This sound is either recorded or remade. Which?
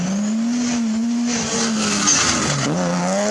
recorded